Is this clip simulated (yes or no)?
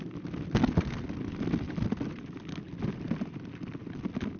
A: no